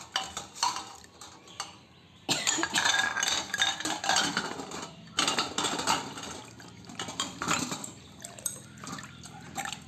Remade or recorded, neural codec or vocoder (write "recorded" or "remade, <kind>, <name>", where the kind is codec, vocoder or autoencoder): recorded